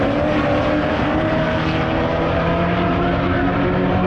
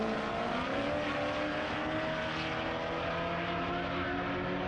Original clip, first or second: second